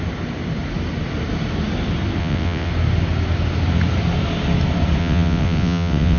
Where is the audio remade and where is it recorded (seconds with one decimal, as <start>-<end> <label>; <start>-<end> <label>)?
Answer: 0.0-2.2 recorded; 2.2-2.7 remade; 2.7-5.0 recorded; 5.0-6.2 remade